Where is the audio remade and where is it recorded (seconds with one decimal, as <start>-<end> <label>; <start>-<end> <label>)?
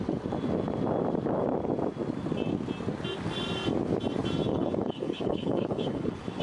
0.0-4.5 recorded; 4.5-6.4 remade